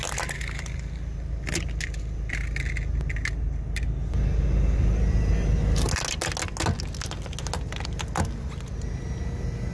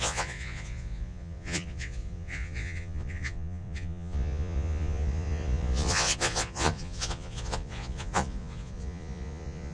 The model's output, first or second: second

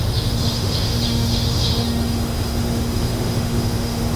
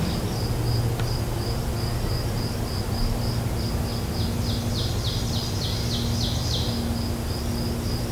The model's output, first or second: first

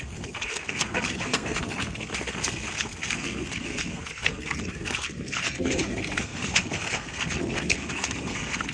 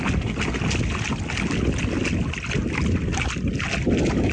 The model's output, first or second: first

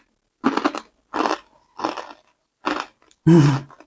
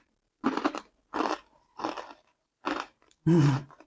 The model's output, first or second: second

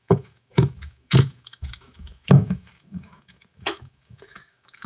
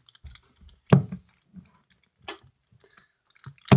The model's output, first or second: first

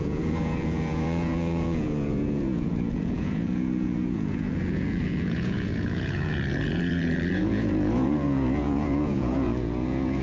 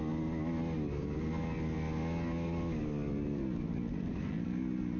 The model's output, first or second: first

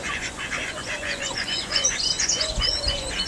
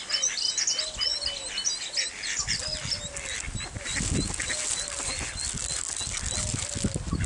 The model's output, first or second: first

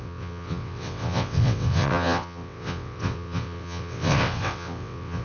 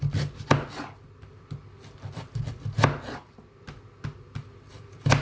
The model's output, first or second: first